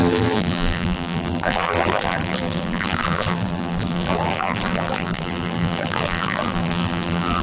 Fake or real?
fake